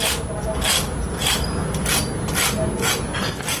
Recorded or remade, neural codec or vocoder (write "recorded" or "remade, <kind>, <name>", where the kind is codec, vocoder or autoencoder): recorded